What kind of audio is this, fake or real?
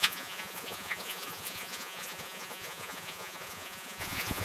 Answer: fake